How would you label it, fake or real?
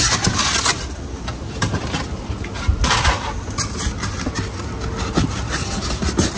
real